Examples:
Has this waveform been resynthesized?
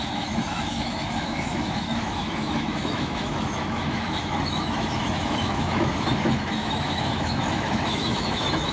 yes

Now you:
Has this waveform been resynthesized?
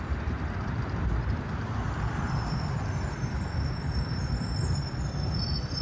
yes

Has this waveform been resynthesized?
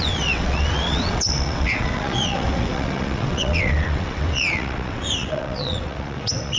yes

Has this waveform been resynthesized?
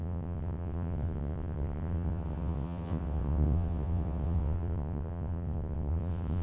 yes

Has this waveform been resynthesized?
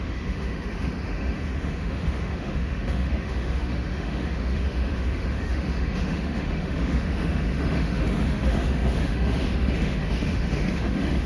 yes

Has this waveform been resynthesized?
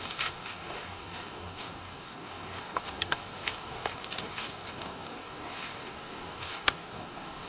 yes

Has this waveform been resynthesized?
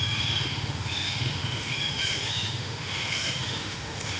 yes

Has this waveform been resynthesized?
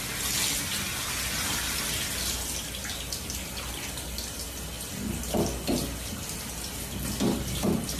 no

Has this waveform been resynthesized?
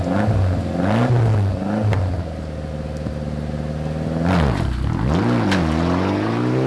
no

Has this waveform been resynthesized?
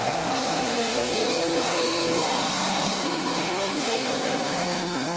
yes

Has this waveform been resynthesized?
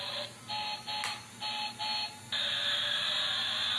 no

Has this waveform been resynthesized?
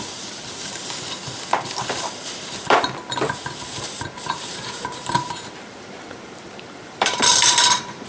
yes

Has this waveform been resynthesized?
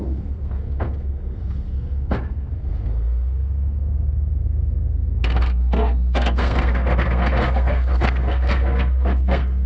yes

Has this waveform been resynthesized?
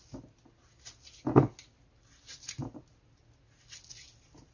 no